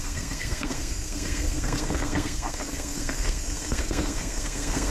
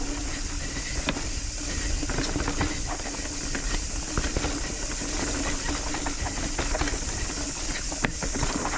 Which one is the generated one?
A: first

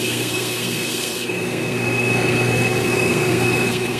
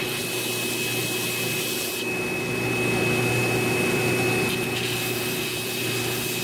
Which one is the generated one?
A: first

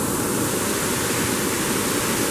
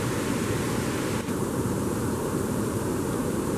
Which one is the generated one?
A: second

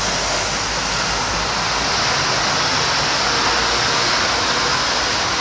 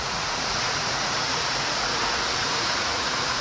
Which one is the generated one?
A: second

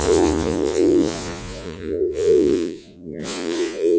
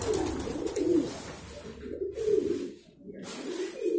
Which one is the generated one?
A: first